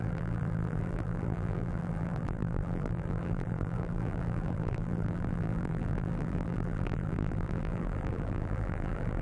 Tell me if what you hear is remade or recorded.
remade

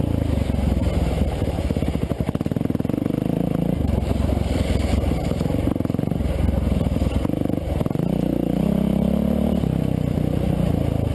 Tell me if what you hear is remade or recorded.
recorded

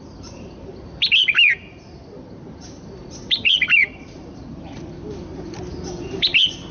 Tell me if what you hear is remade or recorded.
remade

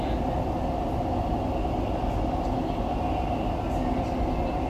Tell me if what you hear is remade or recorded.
recorded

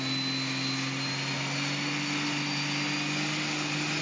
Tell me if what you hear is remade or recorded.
recorded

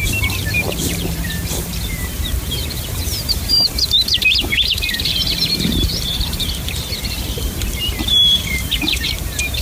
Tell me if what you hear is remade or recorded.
remade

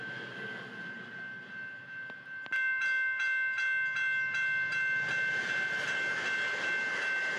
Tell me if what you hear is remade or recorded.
recorded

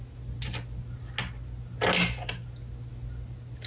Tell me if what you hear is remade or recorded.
recorded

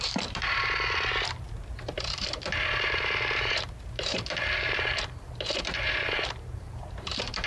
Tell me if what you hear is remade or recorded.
remade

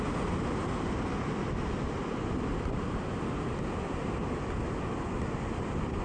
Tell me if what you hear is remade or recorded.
recorded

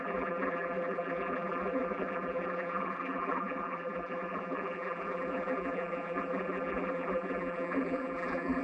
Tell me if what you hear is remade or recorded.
remade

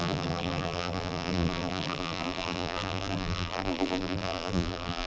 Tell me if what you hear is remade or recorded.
remade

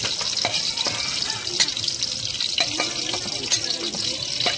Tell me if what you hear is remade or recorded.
recorded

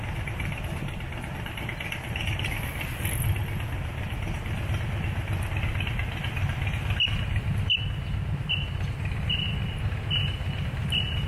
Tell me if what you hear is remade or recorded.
recorded